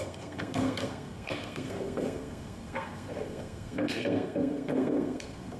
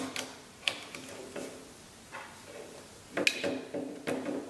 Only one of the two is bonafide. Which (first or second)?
second